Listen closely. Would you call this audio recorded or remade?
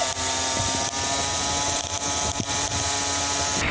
recorded